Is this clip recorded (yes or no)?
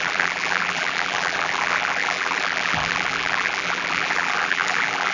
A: no